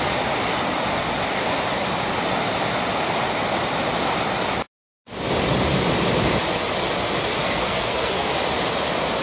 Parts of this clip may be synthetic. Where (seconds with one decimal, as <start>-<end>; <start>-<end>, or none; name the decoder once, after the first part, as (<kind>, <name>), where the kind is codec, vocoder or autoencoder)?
7.4-8.3 (codec, SNAC)